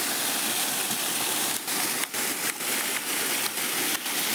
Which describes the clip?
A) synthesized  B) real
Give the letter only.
B